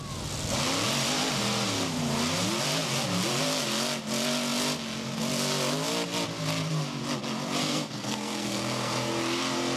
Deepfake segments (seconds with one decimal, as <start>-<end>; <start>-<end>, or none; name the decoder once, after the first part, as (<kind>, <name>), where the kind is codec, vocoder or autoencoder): 7.6-9.1 (codec, SNAC)